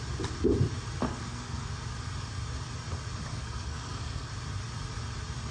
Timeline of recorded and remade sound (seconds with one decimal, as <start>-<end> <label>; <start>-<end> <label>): 0.0-1.0 recorded; 1.0-1.7 remade; 1.7-3.3 recorded; 3.3-4.3 remade; 4.3-5.5 recorded